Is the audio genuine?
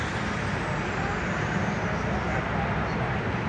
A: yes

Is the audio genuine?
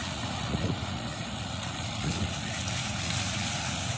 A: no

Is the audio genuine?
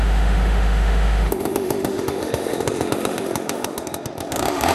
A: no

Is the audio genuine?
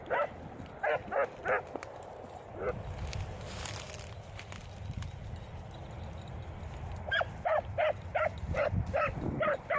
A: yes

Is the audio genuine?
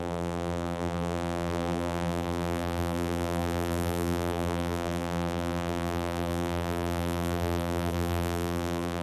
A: no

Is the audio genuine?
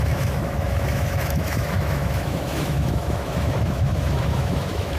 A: no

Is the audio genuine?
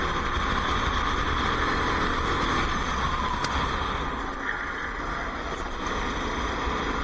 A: yes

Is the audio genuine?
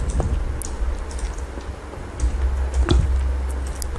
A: yes